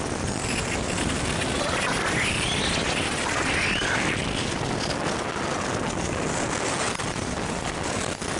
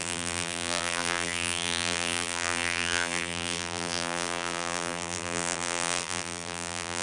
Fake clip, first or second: second